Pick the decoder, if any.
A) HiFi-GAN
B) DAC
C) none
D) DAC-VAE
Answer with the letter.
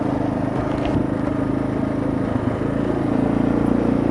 C